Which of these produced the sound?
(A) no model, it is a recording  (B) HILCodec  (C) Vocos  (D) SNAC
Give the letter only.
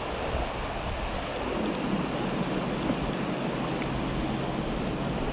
A